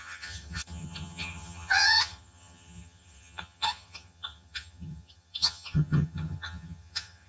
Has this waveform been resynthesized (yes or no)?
yes